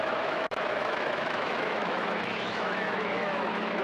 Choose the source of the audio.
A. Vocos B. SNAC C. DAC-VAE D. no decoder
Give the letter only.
C